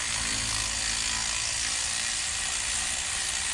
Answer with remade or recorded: recorded